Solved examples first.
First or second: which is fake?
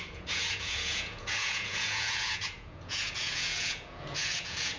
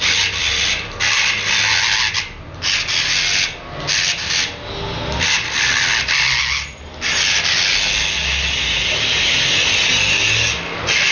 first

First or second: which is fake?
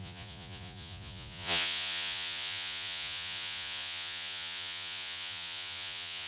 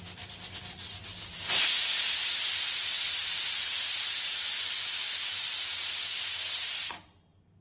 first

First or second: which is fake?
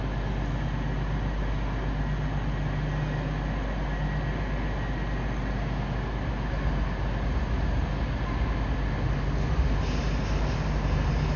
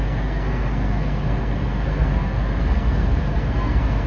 second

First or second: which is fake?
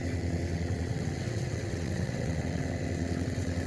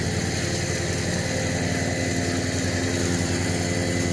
first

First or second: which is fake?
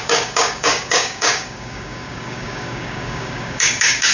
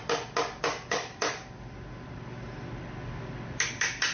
first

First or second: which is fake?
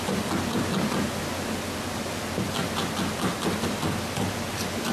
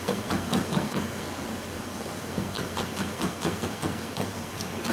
second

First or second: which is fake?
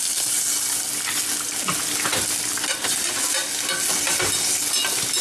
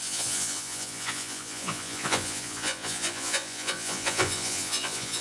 second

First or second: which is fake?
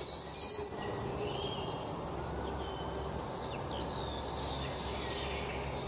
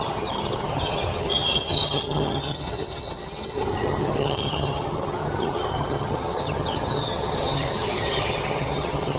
second